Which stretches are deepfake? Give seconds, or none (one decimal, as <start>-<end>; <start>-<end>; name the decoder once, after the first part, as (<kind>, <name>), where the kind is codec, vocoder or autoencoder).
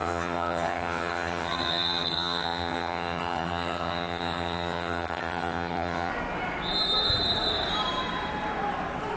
0.0-6.1 (vocoder, HiFi-GAN)